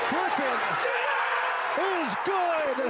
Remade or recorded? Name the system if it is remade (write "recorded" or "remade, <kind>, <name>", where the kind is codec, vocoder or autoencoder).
recorded